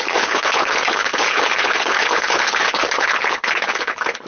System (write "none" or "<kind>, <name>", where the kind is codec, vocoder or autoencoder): codec, HILCodec